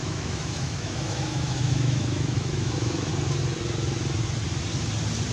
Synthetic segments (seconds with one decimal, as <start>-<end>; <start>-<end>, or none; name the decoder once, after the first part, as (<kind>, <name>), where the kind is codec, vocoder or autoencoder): 0.0-3.1 (autoencoder, DAC-VAE)